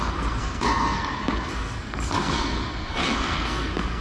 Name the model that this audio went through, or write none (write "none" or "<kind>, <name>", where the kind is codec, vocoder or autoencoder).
codec, SNAC